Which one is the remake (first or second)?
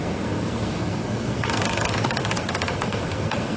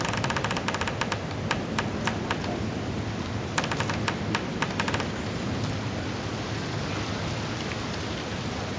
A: first